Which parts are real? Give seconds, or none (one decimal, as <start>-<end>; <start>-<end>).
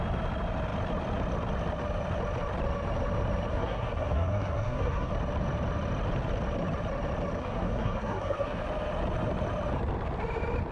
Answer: 0.0-3.5; 5.1-7.4; 8.6-10.7